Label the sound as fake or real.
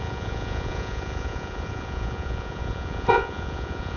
fake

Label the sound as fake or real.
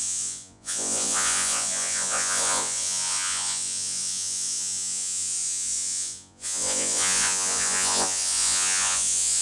fake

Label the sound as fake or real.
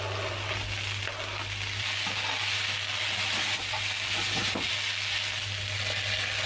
real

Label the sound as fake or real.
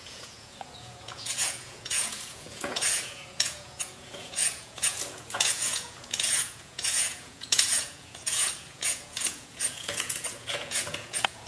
fake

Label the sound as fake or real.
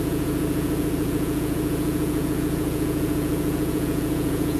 fake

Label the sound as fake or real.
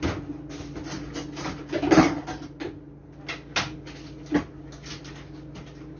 real